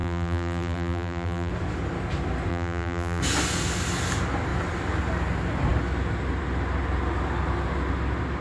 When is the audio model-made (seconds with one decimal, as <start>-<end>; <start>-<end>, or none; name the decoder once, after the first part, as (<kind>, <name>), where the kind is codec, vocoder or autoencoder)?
0.0-1.5 (vocoder, BigVGAN v2); 2.5-3.2